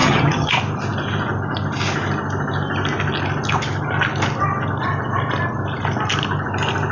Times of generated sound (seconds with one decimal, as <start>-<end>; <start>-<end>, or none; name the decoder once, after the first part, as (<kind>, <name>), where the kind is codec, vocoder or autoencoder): 0.0-0.5 (vocoder, HiFi-GAN)